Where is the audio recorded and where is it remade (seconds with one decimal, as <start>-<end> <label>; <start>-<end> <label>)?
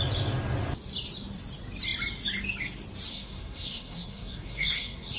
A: 0.0-3.1 recorded; 3.1-5.2 remade